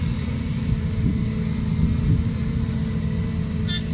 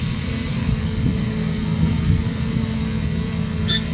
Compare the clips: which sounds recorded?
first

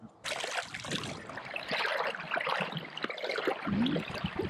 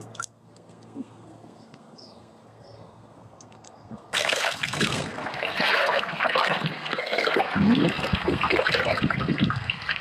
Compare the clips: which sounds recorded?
first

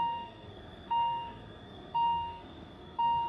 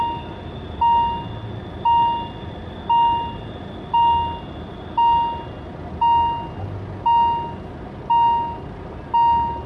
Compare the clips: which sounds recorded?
second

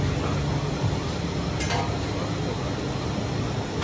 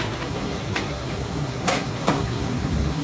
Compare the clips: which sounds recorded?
first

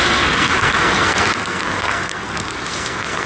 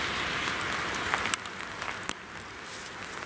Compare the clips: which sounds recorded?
second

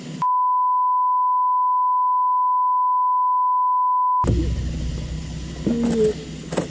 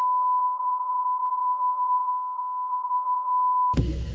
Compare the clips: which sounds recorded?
first